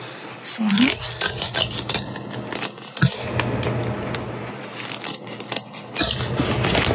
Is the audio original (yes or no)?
yes